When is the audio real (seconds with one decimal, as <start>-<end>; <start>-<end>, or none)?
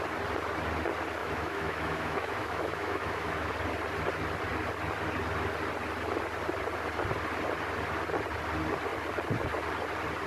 0.0-1.2; 3.5-10.3